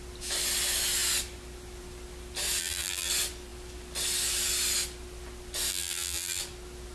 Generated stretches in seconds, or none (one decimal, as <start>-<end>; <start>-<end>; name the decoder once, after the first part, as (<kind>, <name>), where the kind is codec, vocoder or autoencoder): 2.6-3.1 (vocoder, BigVGAN v2); 5.7-6.4